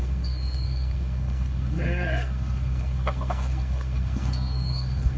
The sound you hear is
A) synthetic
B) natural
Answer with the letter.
A